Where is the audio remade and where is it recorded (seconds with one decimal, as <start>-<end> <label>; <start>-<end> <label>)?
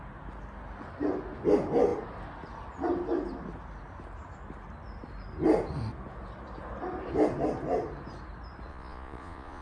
0.0-8.7 recorded; 8.7-9.6 remade